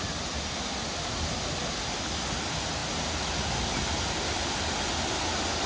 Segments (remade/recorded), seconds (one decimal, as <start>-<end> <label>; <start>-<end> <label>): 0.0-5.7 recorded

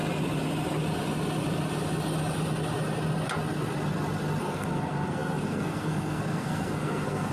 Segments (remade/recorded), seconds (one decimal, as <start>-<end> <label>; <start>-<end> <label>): 0.0-4.4 recorded; 4.4-7.3 remade

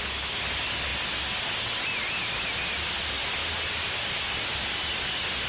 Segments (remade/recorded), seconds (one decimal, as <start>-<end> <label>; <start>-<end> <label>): 0.0-5.5 recorded

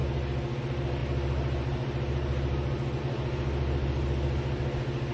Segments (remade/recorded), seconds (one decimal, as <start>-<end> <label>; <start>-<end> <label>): 0.0-5.1 recorded